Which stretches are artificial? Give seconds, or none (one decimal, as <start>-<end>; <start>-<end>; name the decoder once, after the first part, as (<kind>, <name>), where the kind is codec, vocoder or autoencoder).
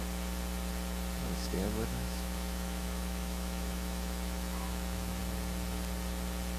1.2-5.2 (autoencoder, DAC-VAE)